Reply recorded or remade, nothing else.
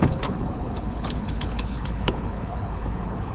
remade